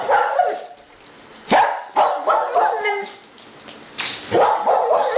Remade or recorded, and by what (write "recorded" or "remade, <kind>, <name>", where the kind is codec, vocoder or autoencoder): recorded